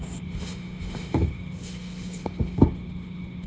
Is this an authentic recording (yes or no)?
no